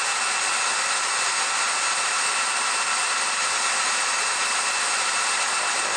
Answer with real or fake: real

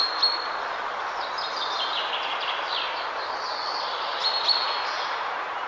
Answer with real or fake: real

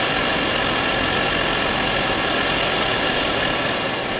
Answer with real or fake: real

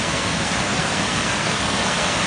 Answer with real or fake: fake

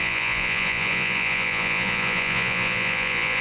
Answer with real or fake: fake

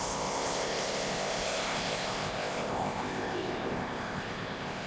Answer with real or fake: fake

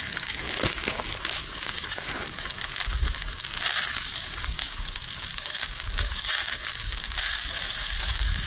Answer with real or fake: fake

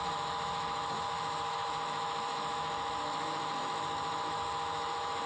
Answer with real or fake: fake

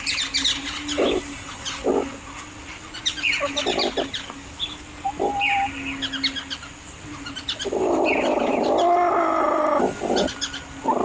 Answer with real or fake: real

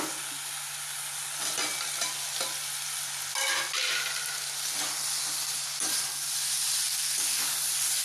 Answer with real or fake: real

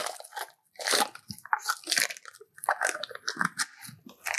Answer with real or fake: real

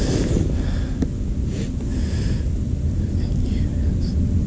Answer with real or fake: real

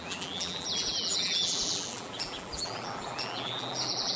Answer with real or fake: fake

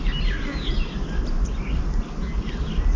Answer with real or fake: real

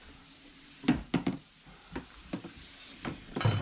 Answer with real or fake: fake